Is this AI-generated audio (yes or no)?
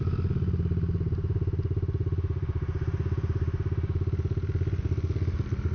no